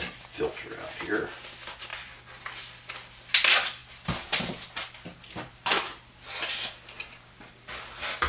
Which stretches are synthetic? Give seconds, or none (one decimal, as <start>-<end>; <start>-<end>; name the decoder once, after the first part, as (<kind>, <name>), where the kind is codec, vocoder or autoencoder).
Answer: none